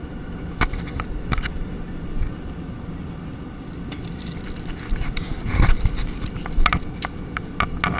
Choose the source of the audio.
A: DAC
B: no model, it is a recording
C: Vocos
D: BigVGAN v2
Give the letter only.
B